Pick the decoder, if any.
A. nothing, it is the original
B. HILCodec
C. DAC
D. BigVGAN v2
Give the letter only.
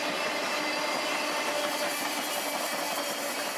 A